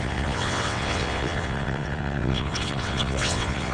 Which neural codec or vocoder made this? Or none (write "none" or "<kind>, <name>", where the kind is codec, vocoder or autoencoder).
vocoder, WaveNeXt